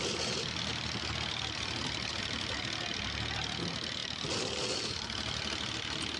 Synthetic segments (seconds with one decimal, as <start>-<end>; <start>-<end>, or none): 4.0-5.0